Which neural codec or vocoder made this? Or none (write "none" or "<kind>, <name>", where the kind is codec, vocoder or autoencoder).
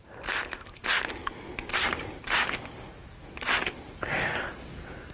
none